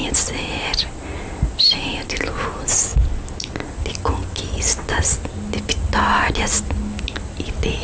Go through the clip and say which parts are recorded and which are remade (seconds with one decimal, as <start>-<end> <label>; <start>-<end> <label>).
0.0-7.8 recorded